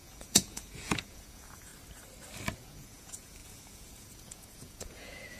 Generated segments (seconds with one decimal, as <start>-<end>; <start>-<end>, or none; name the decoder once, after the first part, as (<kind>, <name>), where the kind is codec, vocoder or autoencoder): 0.0-1.7 (vocoder, Vocos); 2.6-5.4